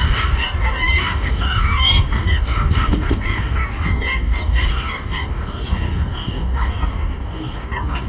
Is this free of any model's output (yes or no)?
no